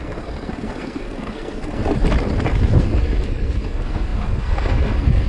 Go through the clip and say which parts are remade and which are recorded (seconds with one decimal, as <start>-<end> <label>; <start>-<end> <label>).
0.0-1.8 remade; 1.8-2.8 recorded; 2.8-5.3 remade